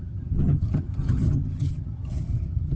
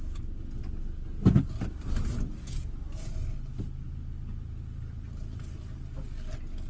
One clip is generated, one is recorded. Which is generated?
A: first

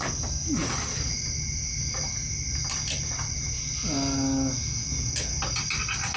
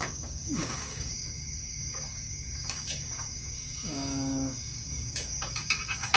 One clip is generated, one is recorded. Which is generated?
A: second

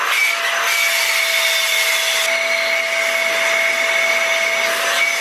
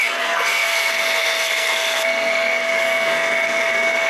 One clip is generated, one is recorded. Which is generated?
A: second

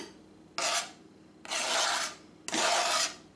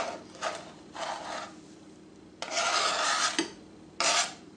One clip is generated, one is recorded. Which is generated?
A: second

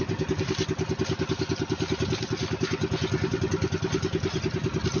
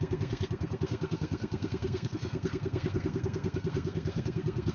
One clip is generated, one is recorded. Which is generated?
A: second